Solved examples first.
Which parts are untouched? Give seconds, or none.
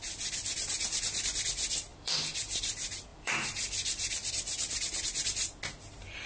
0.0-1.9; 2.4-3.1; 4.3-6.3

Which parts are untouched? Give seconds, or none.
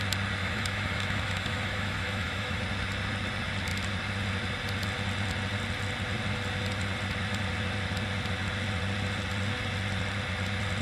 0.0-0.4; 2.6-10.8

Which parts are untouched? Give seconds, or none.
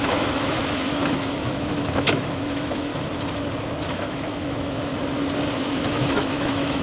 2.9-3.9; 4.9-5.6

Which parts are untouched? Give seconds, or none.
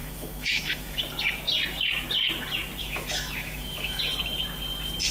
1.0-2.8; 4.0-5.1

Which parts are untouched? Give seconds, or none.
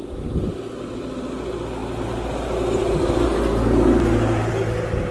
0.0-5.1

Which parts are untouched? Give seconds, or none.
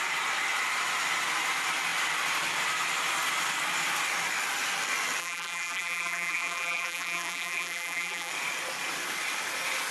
0.0-5.2; 8.3-9.9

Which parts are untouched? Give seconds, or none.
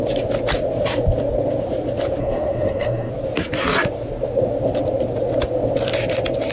0.0-2.2; 3.1-6.5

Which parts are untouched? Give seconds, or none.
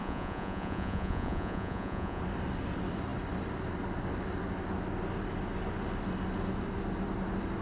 2.2-7.6